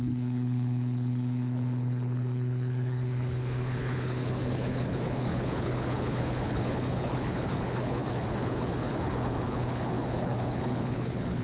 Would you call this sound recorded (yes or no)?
no